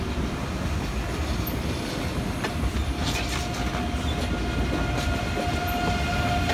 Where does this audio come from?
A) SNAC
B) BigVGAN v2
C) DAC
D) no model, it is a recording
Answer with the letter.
D